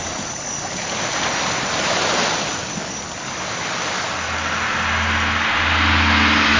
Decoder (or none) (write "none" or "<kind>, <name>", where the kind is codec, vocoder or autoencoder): none